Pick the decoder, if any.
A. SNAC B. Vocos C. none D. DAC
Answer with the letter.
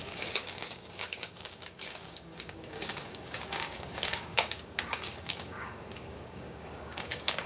D